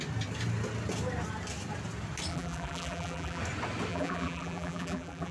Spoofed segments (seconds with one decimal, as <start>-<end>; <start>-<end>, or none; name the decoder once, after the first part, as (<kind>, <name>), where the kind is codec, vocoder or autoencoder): 2.3-3.4 (vocoder, BigVGAN v2); 3.9-5.3